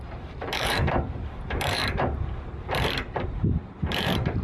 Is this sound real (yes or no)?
no